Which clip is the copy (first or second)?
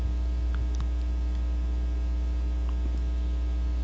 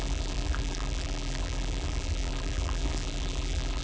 second